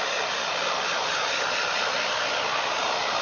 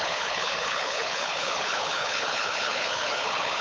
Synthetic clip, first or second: second